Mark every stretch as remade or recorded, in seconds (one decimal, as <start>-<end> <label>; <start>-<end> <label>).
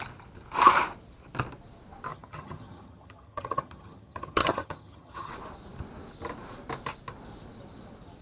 0.0-2.1 recorded; 2.1-5.3 remade; 5.3-8.2 recorded